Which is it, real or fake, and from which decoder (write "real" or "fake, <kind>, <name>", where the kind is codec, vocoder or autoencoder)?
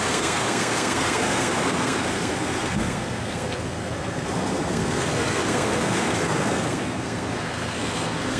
fake, codec, SNAC